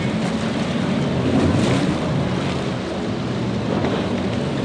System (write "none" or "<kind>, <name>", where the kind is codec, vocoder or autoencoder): none